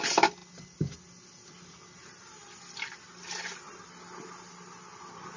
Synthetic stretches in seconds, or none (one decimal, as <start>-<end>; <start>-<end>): none